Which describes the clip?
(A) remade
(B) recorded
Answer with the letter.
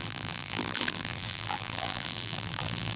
A